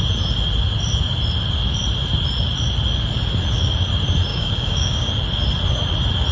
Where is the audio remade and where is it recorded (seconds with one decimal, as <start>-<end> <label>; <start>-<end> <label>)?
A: 0.0-4.3 recorded; 4.3-5.1 remade; 5.1-6.3 recorded